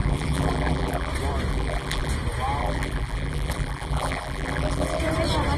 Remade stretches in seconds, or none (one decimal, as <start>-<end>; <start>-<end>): 0.0-1.1; 1.5-2.1; 2.6-5.0

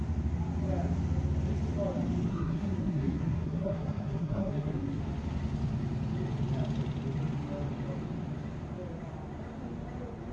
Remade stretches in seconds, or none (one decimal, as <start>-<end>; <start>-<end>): 2.3-5.0